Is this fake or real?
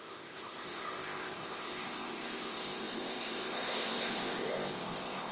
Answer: fake